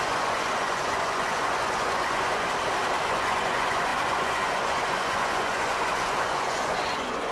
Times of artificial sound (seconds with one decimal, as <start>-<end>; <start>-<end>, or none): 0.0-2.5; 3.1-7.3